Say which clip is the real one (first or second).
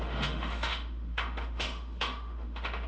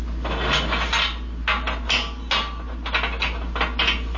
second